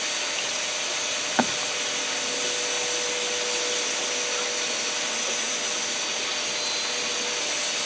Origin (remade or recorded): recorded